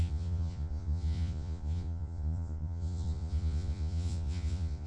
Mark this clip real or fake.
fake